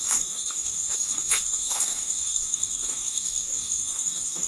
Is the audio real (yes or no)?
no